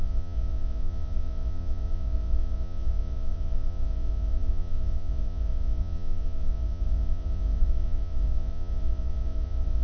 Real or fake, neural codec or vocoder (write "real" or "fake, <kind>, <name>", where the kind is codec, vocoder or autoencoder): fake, vocoder, Vocos